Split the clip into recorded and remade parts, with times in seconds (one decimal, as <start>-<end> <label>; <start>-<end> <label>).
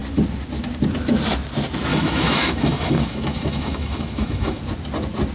0.0-1.9 recorded; 1.9-4.6 remade; 4.6-5.3 recorded